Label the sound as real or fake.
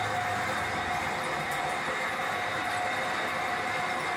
real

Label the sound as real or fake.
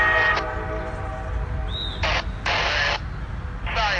real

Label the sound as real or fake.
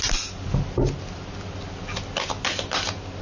real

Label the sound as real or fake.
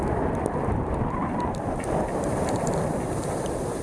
fake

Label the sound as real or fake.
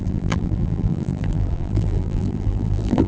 fake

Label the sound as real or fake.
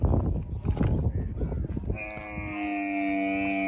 real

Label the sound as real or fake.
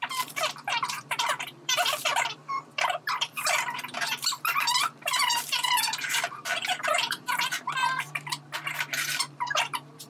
fake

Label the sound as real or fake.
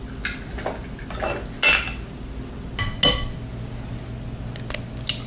real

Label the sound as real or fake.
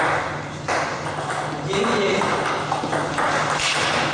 real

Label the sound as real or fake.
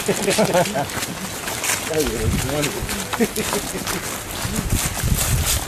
real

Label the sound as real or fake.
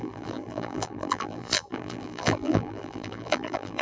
fake